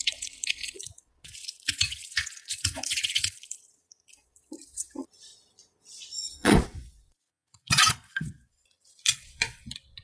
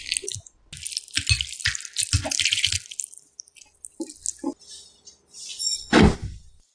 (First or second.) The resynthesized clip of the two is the first